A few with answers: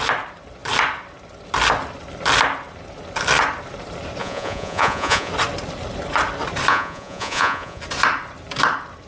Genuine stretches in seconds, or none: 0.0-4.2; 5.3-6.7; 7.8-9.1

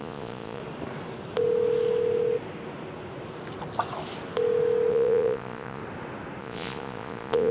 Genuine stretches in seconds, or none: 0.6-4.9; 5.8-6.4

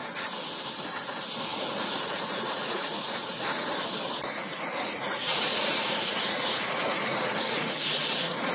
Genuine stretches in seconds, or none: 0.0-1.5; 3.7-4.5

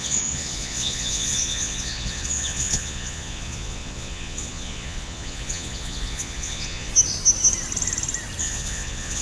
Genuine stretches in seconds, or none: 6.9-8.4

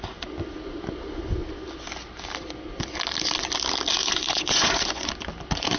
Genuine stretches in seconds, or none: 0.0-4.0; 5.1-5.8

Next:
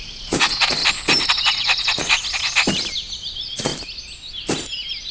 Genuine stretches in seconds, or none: 0.8-1.3; 2.2-3.2; 3.7-5.1

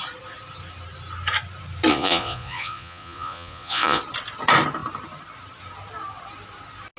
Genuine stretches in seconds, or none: 0.0-1.9; 4.0-7.0